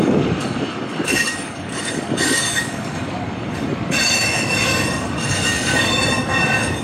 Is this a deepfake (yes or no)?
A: yes